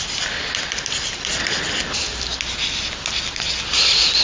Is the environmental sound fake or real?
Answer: real